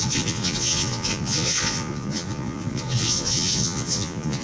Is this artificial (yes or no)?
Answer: yes